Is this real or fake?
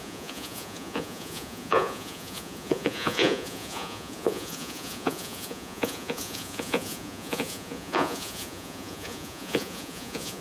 fake